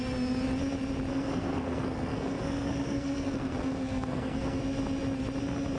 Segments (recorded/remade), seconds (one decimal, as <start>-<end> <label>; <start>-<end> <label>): 0.0-1.1 recorded; 1.1-4.6 remade; 4.6-5.8 recorded